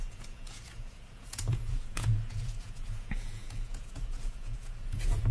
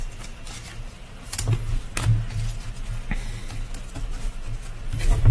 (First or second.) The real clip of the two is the second